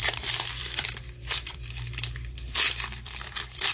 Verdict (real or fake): fake